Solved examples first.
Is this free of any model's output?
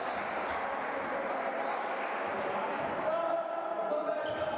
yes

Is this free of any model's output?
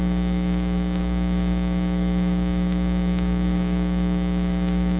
no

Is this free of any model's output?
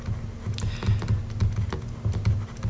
yes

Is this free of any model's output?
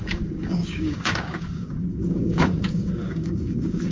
no